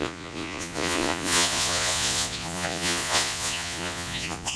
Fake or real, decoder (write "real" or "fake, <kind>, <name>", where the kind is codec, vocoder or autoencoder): fake, vocoder, Vocos